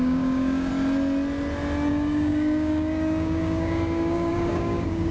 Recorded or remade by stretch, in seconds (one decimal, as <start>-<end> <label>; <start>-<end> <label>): 0.0-0.7 remade; 0.7-1.9 recorded; 1.9-5.1 remade